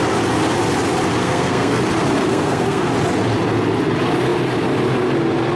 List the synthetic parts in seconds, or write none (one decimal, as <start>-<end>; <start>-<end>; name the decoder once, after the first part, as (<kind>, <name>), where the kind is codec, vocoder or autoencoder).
1.2-1.8 (codec, SNAC); 2.2-2.9